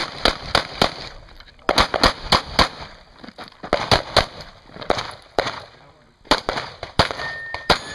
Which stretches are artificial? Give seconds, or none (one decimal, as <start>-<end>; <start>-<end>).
none